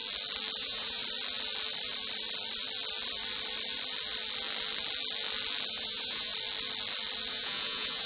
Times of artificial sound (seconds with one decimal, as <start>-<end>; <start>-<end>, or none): 0.6-1.0; 5.7-6.3; 7.3-8.1